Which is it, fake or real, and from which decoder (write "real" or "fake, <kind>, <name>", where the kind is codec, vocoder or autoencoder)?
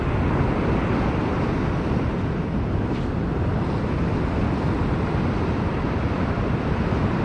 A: real